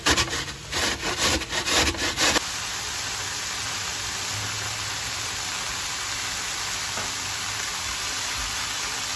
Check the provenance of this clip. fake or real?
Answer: real